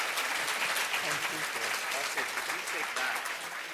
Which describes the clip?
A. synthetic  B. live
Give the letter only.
B